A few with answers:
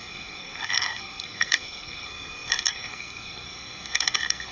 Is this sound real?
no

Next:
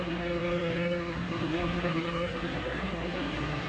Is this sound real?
no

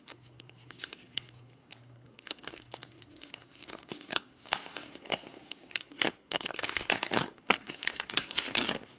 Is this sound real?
no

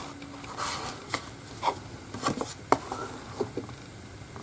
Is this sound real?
yes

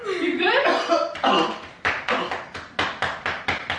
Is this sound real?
yes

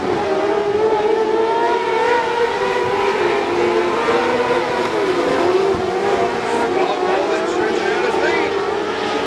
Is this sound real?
yes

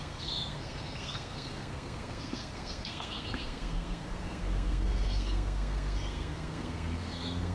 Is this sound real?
no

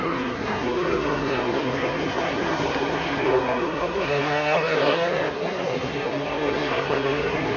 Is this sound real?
no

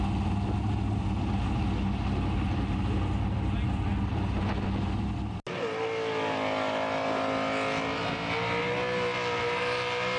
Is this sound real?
yes